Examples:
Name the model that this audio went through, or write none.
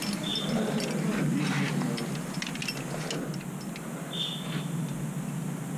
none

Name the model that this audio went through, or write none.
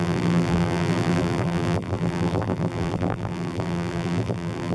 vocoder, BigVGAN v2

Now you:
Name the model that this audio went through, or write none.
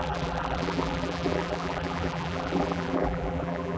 vocoder, BigVGAN v2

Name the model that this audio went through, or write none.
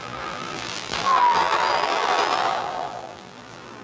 vocoder, BigVGAN v2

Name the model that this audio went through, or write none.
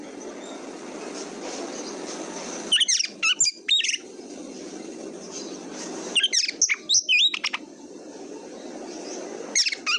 none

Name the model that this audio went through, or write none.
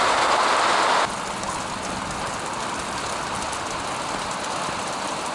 none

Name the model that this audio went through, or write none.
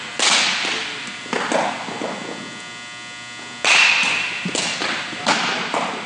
none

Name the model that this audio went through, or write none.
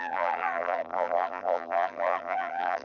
vocoder, BigVGAN v2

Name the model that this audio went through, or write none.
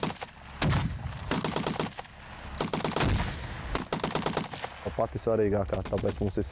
none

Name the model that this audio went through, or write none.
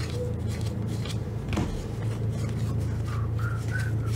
none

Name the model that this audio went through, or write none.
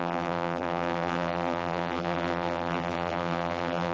vocoder, BigVGAN v2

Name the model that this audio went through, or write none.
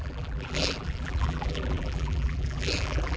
vocoder, BigVGAN v2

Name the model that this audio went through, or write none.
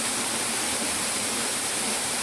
vocoder, BigVGAN v2